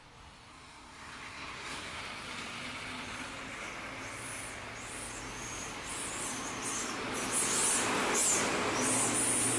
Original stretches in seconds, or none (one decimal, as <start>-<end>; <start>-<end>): 0.0-0.5; 2.0-9.6